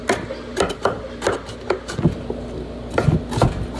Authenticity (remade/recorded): recorded